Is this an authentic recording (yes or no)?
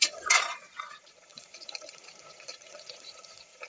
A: no